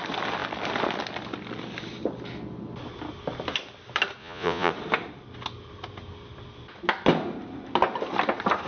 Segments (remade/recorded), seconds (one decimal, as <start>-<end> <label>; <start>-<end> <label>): 0.0-4.2 recorded; 4.2-4.7 remade; 4.7-8.7 recorded